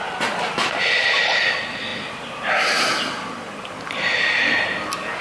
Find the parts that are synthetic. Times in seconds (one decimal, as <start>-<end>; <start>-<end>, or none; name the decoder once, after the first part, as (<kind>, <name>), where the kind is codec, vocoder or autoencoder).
none